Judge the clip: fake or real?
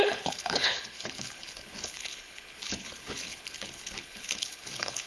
fake